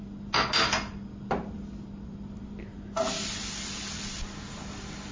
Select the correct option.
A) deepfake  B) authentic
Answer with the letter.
B